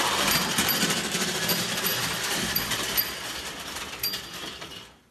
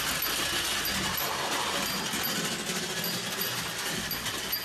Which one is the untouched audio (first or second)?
second